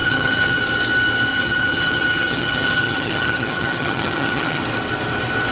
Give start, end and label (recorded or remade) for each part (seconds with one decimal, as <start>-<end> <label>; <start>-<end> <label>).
0.0-0.6 remade; 0.6-1.3 recorded; 1.3-4.6 remade; 4.6-5.5 recorded